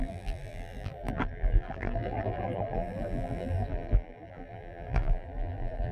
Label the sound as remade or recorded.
remade